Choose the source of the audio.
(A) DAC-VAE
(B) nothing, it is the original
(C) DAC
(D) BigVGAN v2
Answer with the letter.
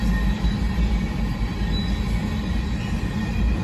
B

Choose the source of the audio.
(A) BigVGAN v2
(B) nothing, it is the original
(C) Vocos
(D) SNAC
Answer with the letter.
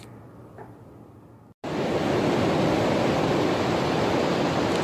B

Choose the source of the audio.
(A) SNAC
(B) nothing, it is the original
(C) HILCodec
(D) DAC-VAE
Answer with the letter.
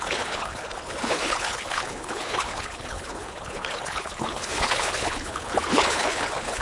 C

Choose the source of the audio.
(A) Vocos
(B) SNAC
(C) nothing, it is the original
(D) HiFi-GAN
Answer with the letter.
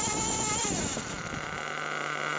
C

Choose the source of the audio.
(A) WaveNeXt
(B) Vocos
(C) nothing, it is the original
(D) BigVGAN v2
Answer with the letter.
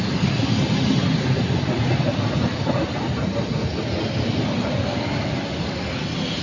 C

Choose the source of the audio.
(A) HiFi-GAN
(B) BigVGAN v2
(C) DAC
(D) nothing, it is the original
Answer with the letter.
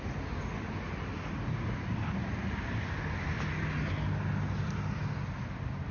D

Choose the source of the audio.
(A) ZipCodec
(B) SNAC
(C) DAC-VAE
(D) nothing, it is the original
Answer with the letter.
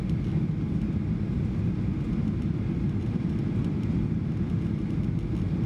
D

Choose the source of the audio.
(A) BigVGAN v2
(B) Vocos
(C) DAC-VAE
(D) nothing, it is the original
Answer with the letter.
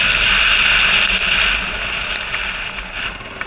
D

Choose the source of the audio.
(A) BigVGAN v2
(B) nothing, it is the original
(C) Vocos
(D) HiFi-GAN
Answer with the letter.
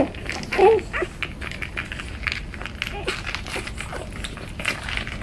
B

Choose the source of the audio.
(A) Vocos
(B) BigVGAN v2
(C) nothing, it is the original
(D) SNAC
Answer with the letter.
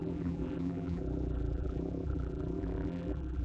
B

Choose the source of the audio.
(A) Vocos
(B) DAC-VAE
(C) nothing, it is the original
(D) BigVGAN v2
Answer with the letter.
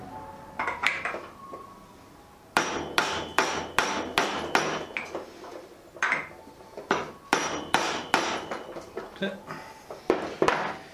C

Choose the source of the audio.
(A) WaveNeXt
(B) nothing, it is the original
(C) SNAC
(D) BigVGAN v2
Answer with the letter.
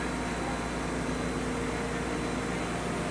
B